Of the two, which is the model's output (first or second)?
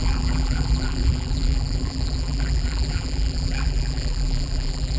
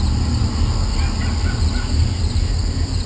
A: first